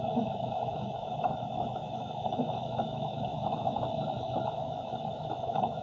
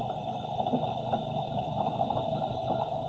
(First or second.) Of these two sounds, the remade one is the first